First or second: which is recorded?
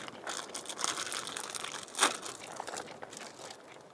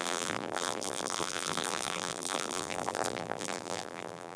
first